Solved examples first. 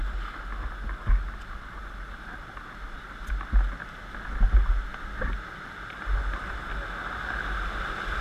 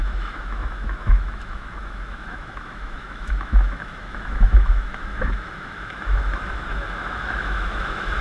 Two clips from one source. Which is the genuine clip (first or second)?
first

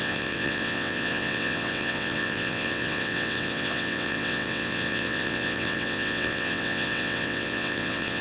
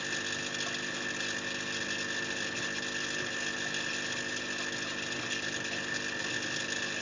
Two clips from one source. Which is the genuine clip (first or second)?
second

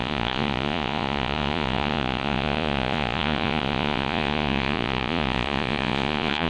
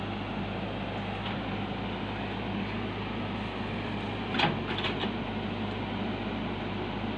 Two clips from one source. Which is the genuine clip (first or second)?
second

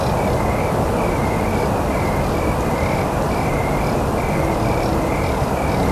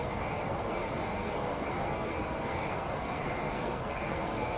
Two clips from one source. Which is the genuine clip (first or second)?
first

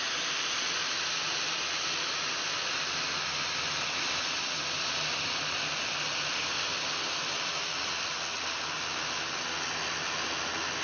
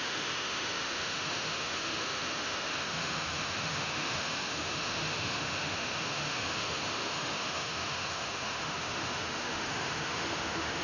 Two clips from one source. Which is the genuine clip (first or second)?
first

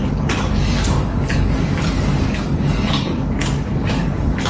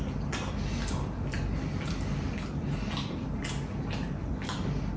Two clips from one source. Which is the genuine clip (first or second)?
second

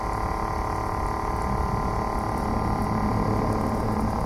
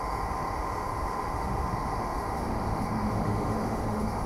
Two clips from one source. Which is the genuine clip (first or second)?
first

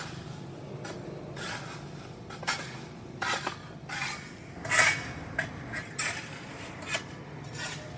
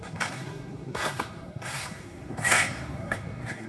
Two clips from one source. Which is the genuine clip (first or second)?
first